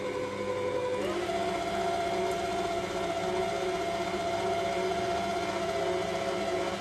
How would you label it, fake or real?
real